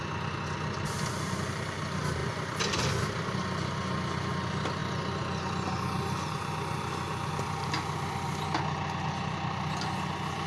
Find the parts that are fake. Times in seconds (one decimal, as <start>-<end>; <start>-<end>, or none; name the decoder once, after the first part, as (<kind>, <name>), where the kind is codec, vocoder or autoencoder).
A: none